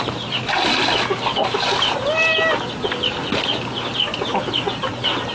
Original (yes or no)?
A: yes